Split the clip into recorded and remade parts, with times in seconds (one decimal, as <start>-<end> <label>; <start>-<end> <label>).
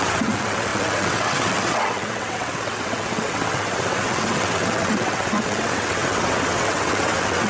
0.0-7.5 remade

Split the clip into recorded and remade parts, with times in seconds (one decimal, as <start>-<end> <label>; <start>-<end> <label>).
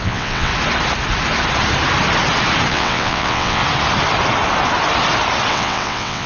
0.0-0.5 remade; 0.5-2.7 recorded; 2.7-3.6 remade; 3.6-5.5 recorded; 5.5-6.3 remade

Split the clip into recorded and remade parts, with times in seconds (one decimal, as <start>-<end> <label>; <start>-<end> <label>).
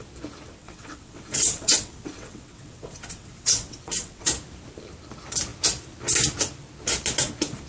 0.0-0.6 recorded; 0.6-4.3 remade; 4.3-7.7 recorded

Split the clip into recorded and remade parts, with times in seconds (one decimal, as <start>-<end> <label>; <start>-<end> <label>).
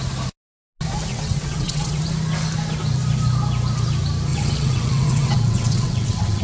0.0-1.1 recorded; 1.1-2.0 remade; 2.0-4.3 recorded; 4.3-6.4 remade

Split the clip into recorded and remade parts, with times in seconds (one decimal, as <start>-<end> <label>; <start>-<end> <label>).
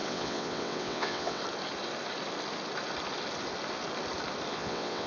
0.0-1.4 remade; 1.4-4.5 recorded; 4.5-5.1 remade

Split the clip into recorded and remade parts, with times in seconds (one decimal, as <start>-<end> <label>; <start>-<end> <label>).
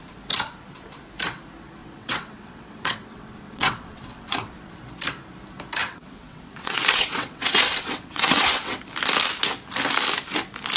0.0-1.8 recorded; 1.8-4.7 remade; 4.7-5.8 recorded; 5.8-8.8 remade; 8.8-10.8 recorded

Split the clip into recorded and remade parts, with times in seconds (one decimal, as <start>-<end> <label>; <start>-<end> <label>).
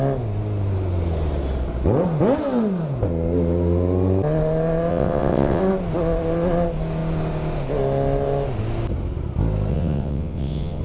0.0-4.9 recorded; 4.9-5.6 remade; 5.6-9.7 recorded; 9.7-10.8 remade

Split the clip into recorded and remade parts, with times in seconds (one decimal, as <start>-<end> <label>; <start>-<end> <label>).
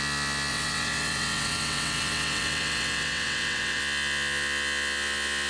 0.0-0.5 recorded; 0.5-3.8 remade; 3.8-5.5 recorded